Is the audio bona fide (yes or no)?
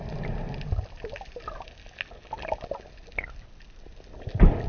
yes